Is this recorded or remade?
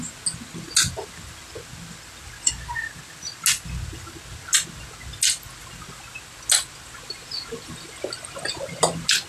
recorded